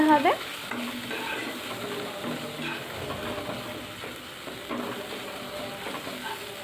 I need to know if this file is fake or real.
real